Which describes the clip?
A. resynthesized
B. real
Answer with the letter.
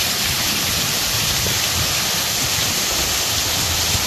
B